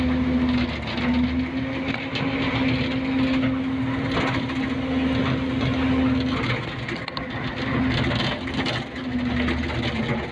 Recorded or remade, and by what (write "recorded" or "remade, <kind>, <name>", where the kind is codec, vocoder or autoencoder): recorded